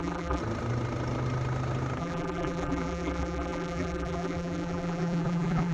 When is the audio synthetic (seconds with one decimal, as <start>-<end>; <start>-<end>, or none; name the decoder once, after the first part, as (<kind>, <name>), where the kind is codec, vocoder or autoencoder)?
0.0-0.4 (vocoder, BigVGAN v2); 2.0-5.7